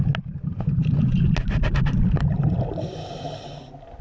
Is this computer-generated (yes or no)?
no